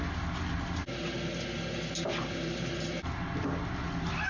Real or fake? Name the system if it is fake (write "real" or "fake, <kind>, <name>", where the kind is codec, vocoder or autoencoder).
real